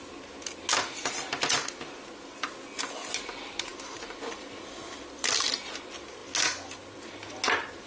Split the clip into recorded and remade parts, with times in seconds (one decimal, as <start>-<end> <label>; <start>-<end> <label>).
0.0-3.7 recorded; 3.7-5.4 remade; 5.4-7.9 recorded